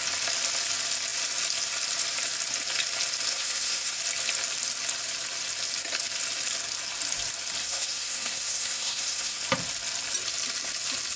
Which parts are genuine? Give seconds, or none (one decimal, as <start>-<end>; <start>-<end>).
0.0-3.3; 4.0-7.6; 9.4-11.2